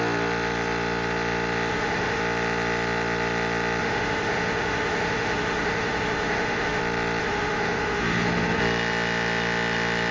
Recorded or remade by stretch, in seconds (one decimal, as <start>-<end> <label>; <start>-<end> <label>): 0.0-1.7 recorded; 1.7-2.2 remade; 2.2-3.8 recorded; 3.8-6.8 remade; 6.8-7.2 recorded; 7.2-8.6 remade; 8.6-10.1 recorded